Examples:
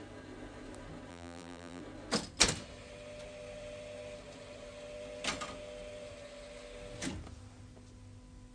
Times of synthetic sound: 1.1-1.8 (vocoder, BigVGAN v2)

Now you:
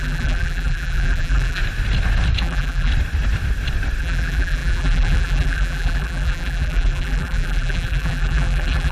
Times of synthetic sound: 0.0-1.6 (vocoder, BigVGAN v2); 2.4-2.9; 4.0-8.9

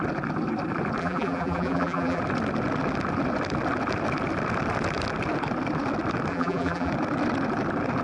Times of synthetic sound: 1.0-2.2 (vocoder, BigVGAN v2); 6.3-6.9